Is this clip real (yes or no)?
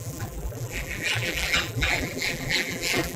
no